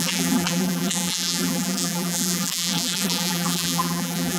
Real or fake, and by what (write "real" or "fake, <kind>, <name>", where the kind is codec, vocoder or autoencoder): fake, vocoder, BigVGAN v2